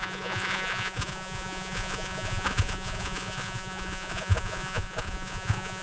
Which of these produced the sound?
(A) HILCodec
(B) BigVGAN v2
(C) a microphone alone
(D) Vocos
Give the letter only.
D